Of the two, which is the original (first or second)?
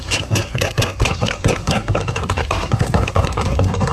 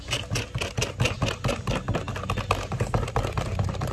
second